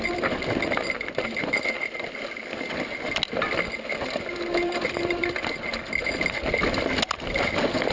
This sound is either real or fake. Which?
real